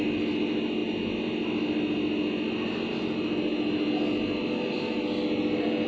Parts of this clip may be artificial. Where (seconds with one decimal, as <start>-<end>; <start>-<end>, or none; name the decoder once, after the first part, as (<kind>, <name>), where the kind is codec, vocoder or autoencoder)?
none